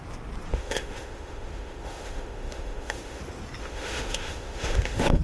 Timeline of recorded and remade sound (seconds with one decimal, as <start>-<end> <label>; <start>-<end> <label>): 0.0-0.5 recorded; 0.5-3.2 remade; 3.2-3.6 recorded; 3.6-5.2 remade